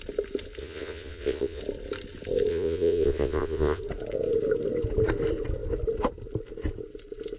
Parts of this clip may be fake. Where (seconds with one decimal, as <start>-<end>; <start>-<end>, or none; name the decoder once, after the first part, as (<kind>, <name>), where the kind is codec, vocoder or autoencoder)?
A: 0.6-1.6 (vocoder, Vocos); 2.5-3.8